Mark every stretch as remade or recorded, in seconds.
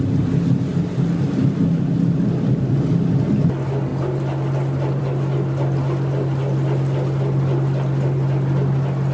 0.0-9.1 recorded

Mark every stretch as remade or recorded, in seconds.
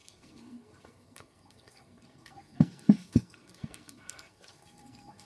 0.0-5.3 remade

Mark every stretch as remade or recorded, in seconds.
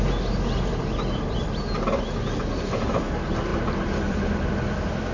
0.0-3.5 recorded; 3.5-4.5 remade; 4.5-5.1 recorded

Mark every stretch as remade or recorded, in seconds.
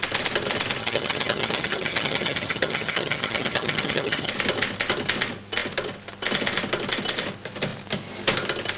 0.0-0.8 recorded; 0.8-4.3 remade; 4.3-8.8 recorded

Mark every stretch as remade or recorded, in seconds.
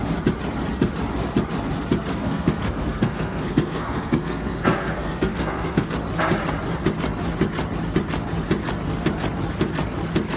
0.0-2.1 recorded; 2.1-5.9 remade; 5.9-10.4 recorded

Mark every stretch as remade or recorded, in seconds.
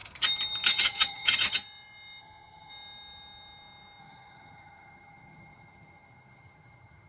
0.0-0.7 recorded; 0.7-1.6 remade; 1.6-2.2 recorded; 2.2-2.7 remade; 2.7-4.0 recorded; 4.0-7.1 remade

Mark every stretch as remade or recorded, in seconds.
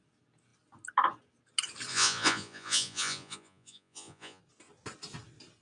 0.0-1.9 recorded; 1.9-4.4 remade; 4.4-5.6 recorded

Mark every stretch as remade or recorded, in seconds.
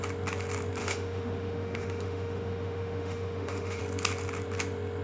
0.0-0.8 recorded; 0.8-3.8 remade; 3.8-5.0 recorded